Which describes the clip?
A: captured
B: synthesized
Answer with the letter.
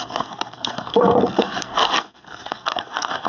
B